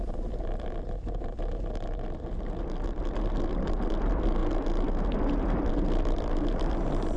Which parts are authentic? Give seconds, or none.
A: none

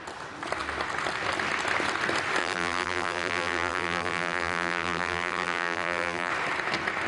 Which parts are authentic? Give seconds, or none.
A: 0.0-2.4; 6.3-7.1

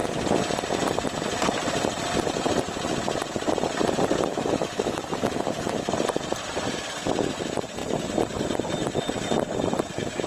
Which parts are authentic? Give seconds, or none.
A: 0.0-4.3; 5.9-10.3

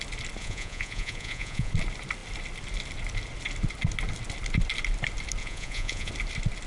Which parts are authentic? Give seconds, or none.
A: 0.0-0.4; 1.7-5.4; 6.1-6.7

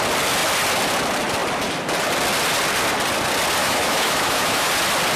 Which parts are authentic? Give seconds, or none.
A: 0.0-3.6; 4.7-5.2

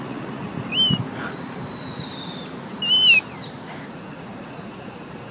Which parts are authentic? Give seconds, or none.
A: 0.7-3.9